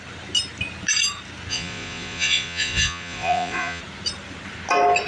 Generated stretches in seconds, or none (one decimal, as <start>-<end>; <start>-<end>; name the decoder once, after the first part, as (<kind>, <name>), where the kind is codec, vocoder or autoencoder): 1.5-3.8 (vocoder, Vocos)